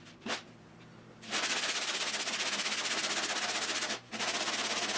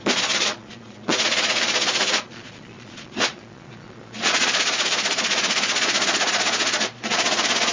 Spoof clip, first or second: second